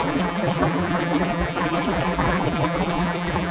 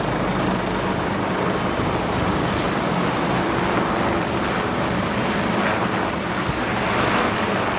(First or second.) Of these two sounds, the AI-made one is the first